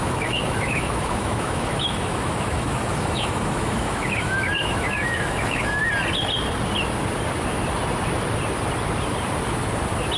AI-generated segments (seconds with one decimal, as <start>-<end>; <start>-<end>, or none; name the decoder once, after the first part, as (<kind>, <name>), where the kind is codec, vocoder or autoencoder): 0.0-5.8 (autoencoder, DAC-VAE)